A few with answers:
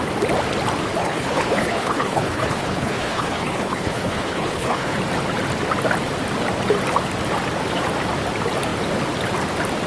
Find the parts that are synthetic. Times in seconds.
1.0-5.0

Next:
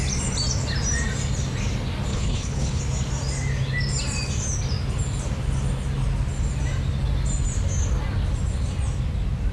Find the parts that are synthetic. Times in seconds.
2.1-2.8